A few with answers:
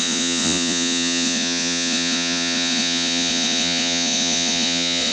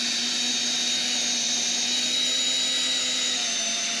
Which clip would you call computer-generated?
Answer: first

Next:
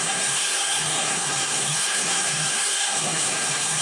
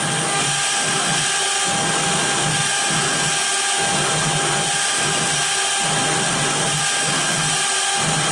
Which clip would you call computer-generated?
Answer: first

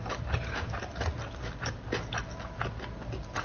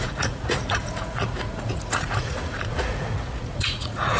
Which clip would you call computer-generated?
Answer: second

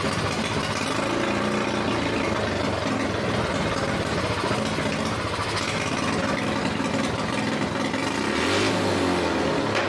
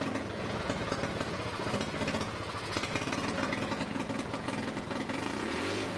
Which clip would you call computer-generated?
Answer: second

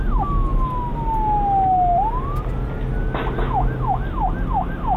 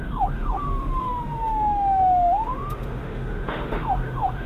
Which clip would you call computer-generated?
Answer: second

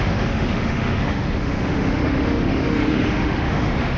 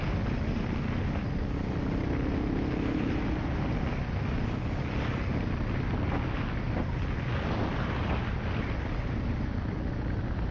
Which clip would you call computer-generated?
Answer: first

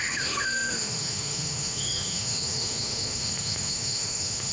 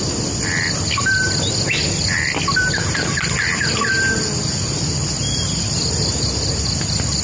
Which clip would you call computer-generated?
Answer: first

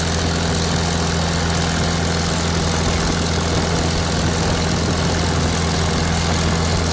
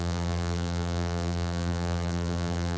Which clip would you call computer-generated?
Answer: second